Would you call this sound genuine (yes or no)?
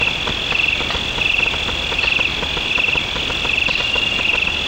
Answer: yes